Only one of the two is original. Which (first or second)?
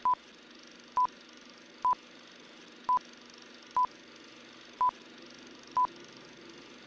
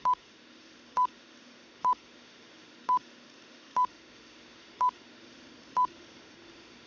first